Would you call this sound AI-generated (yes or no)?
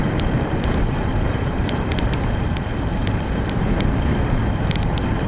yes